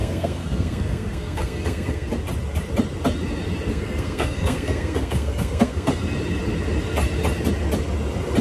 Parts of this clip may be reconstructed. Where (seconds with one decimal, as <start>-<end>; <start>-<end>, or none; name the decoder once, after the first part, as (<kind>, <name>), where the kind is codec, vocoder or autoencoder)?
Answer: 0.0-2.1 (codec, SNAC); 3.7-6.0